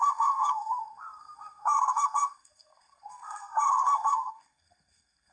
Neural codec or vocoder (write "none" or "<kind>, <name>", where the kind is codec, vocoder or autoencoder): codec, SNAC